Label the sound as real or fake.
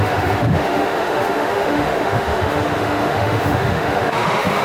fake